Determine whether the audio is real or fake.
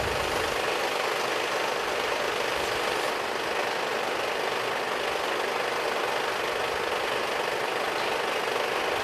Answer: real